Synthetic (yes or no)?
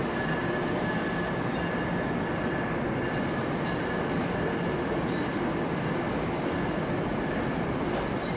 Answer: no